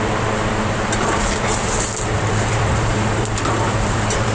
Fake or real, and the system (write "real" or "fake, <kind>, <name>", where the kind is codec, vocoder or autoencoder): fake, vocoder, BigVGAN v2